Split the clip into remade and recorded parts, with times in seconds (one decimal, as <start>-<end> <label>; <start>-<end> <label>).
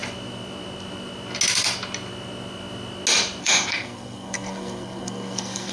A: 0.0-3.4 recorded; 3.4-5.7 remade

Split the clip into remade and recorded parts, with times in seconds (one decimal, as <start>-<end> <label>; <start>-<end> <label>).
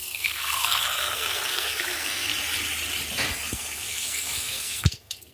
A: 0.0-2.3 remade; 2.3-3.3 recorded; 3.3-5.3 remade